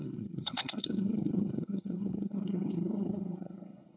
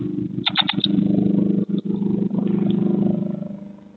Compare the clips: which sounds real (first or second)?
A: second